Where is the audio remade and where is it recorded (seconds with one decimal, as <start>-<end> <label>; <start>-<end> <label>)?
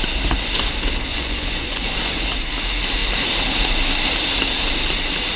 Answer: 0.0-1.1 recorded; 1.1-2.2 remade; 2.2-5.4 recorded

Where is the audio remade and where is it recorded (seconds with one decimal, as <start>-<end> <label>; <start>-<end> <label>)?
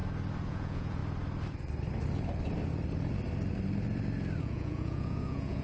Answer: 0.0-0.5 recorded; 0.5-1.0 remade; 1.0-4.4 recorded; 4.4-5.6 remade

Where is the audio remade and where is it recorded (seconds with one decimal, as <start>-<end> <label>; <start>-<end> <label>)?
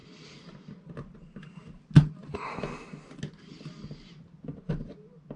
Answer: 0.0-5.4 recorded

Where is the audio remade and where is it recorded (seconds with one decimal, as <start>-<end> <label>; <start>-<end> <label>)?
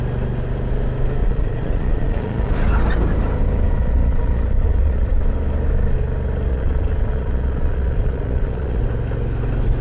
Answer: 0.0-1.2 recorded; 1.2-2.5 remade; 2.5-3.8 recorded; 3.8-5.1 remade; 5.1-6.5 recorded; 6.5-8.8 remade; 8.8-9.8 recorded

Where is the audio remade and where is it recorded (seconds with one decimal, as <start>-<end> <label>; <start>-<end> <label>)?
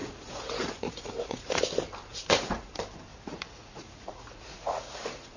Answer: 0.0-1.6 remade; 1.6-2.1 recorded; 2.1-2.7 remade; 2.7-3.1 recorded; 3.1-5.4 remade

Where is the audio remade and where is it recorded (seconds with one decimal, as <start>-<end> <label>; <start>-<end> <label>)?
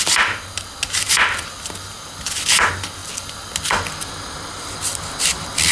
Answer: 0.0-5.7 recorded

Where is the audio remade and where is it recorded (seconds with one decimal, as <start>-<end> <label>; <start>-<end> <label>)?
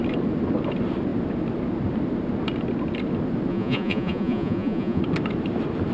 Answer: 0.0-3.5 recorded; 3.5-5.0 remade; 5.0-5.9 recorded